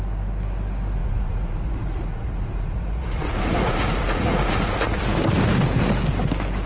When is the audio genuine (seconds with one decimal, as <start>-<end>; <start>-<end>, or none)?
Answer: 0.0-1.0; 5.0-6.7